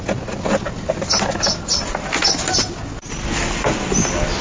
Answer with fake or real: real